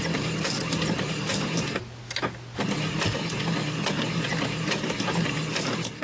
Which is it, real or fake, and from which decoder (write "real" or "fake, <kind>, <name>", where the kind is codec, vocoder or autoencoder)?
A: real